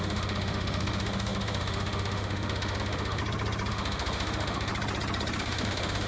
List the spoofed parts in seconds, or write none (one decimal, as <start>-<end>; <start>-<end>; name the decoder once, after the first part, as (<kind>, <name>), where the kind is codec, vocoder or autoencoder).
0.0-3.2 (autoencoder, DAC-VAE); 3.7-4.7; 5.4-6.1